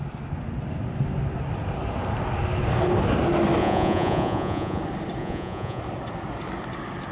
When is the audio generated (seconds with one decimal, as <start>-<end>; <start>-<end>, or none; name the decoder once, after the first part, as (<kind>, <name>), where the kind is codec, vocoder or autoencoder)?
3.6-4.8 (vocoder, Vocos); 5.2-5.8